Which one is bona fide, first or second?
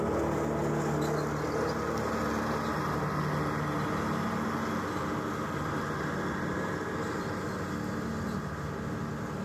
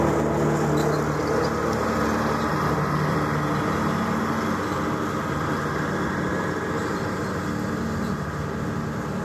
first